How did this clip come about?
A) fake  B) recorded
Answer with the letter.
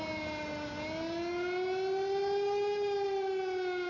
B